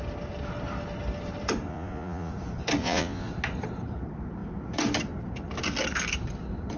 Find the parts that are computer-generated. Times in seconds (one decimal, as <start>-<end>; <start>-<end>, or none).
1.7-2.3; 2.8-3.3